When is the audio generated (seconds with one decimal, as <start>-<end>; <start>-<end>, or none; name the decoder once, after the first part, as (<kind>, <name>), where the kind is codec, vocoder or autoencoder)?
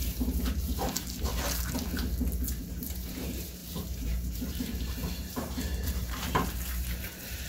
0.0-1.3 (vocoder, BigVGAN v2); 2.6-7.5